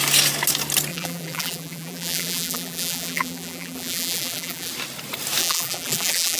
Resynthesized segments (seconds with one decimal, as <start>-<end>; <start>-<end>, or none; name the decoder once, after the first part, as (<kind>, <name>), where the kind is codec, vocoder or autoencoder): 0.9-4.7 (vocoder, BigVGAN v2); 5.4-6.4